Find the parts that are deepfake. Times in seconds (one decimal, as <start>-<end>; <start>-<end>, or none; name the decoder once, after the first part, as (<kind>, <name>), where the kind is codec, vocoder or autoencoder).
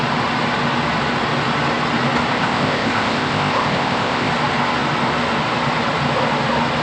2.3-4.3 (codec, ZipCodec)